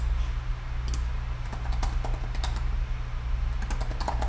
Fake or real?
real